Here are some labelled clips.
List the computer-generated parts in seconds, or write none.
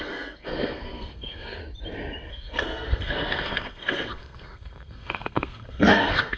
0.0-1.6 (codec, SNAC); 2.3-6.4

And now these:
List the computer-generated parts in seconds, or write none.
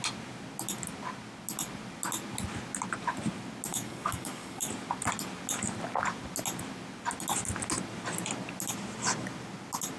3.7-4.7 (codec, DAC)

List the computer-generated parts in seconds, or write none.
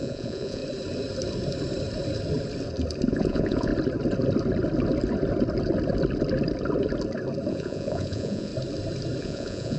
0.0-0.6 (vocoder, Vocos); 3.1-3.7; 7.5-8.5; 9.2-9.8